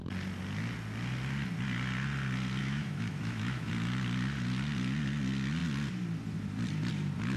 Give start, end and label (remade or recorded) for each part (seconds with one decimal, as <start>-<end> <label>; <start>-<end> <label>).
0.0-2.6 recorded; 2.6-3.7 remade; 3.7-7.4 recorded